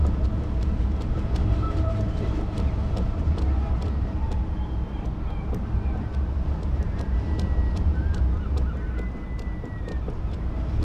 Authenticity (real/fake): real